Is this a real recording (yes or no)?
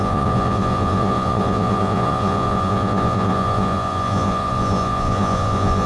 no